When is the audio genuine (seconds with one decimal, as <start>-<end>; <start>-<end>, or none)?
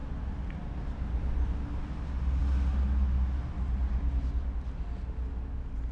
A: 0.0-5.9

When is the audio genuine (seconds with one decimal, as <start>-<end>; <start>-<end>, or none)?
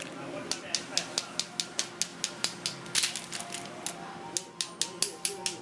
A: 0.0-5.6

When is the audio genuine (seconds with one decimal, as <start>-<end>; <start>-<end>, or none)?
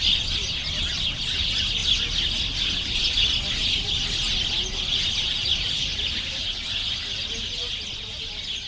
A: 0.0-8.7